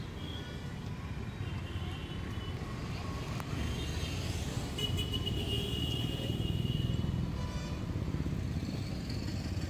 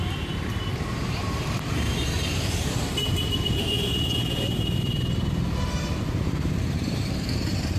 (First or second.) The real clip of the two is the first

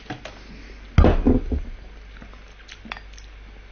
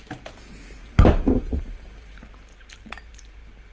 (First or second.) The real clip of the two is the first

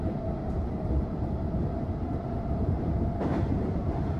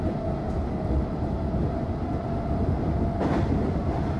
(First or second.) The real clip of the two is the second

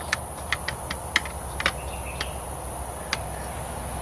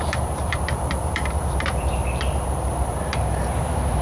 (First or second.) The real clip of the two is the first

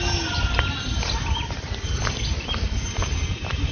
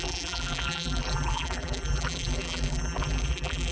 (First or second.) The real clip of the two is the first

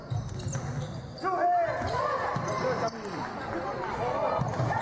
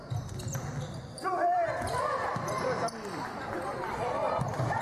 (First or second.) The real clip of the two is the first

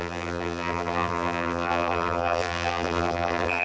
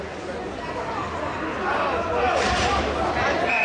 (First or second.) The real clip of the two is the second